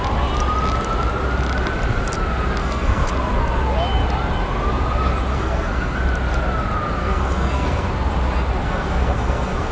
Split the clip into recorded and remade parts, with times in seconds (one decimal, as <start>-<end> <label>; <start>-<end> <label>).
0.0-2.6 recorded; 2.6-3.1 remade; 3.1-5.3 recorded; 5.3-6.0 remade; 6.0-7.0 recorded; 7.0-7.9 remade; 7.9-8.6 recorded; 8.6-9.7 remade